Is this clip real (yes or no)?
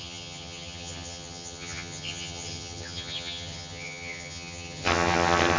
no